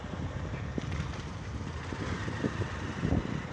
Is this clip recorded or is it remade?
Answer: recorded